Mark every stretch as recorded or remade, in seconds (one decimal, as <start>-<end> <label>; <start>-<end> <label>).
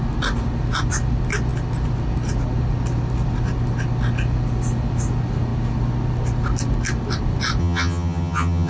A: 0.0-7.6 recorded; 7.6-8.7 remade